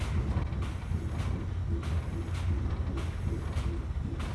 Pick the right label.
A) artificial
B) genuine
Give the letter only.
B